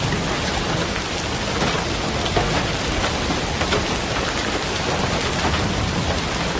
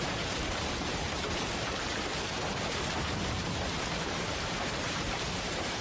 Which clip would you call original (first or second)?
first